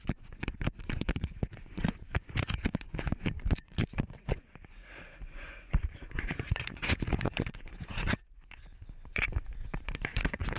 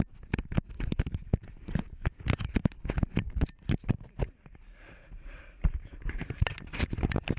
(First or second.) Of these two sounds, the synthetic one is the first